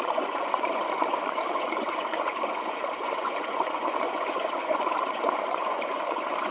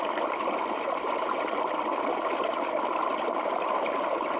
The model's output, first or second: first